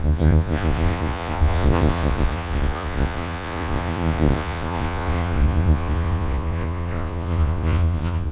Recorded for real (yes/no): no